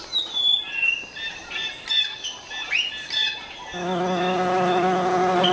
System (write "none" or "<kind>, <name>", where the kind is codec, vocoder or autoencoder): none